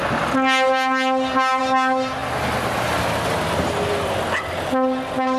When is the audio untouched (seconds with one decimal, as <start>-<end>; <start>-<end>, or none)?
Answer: 0.0-5.4